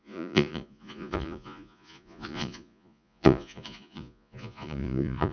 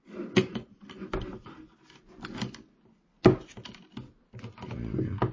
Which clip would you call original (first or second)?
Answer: second